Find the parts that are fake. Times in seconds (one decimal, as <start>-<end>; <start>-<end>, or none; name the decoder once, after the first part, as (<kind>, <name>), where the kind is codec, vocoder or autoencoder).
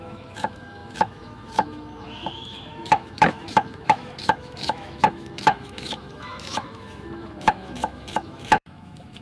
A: 0.0-9.2 (autoencoder, DAC-VAE)